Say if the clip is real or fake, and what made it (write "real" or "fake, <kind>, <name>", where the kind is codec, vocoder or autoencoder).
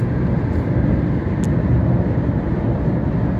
real